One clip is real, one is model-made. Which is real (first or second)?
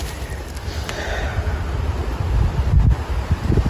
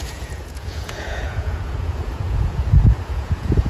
first